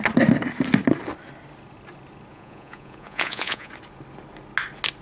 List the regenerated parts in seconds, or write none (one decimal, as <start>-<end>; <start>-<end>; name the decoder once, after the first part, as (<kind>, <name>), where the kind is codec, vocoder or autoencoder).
2.3-3.7 (vocoder, Vocos)